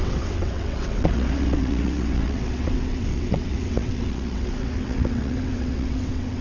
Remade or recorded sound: remade